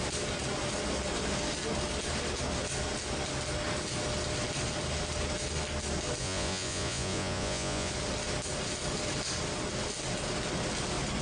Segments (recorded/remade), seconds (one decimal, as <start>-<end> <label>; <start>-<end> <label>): 0.0-6.2 recorded; 6.2-7.9 remade; 7.9-11.2 recorded